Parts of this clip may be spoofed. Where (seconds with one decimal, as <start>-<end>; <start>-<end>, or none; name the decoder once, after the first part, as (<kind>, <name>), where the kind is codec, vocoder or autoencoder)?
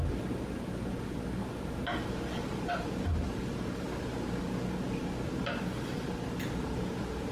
1.4-4.4 (vocoder, BigVGAN v2)